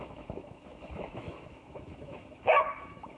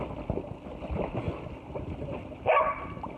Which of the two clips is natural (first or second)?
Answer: second